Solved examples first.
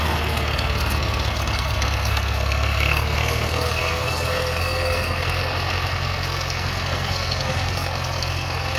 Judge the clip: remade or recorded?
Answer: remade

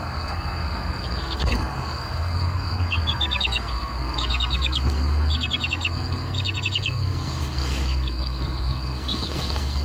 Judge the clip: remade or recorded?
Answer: remade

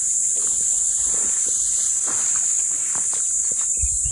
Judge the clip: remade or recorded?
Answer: recorded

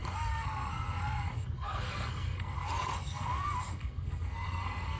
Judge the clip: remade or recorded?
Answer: remade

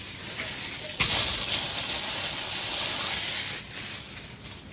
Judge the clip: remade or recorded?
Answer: recorded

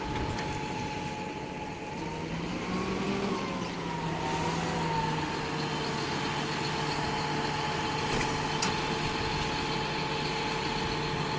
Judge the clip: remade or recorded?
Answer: recorded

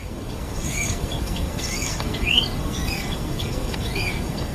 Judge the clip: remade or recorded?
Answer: remade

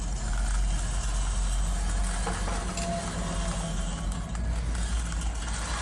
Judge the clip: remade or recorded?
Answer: recorded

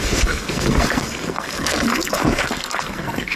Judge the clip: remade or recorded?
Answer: remade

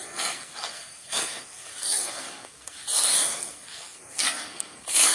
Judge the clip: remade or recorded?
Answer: remade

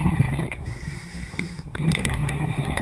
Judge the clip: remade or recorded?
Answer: remade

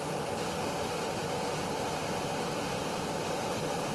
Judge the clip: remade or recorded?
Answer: recorded